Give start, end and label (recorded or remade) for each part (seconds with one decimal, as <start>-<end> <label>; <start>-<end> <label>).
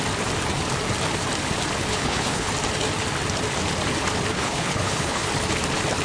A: 0.0-1.9 recorded; 1.9-2.5 remade; 2.5-4.3 recorded; 4.3-5.3 remade; 5.3-6.0 recorded